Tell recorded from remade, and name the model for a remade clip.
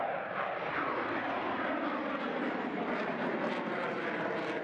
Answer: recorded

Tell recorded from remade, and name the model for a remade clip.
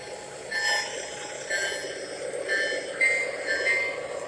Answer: recorded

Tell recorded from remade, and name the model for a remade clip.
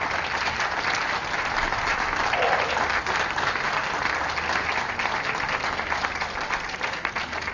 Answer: recorded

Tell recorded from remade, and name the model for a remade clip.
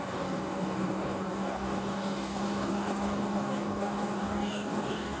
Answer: remade, codec, DAC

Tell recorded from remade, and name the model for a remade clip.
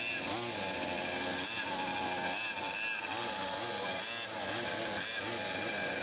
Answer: recorded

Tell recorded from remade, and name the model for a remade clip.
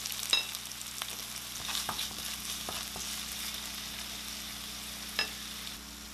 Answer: recorded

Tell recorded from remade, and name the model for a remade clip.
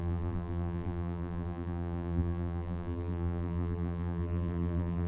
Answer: remade, vocoder, BigVGAN v2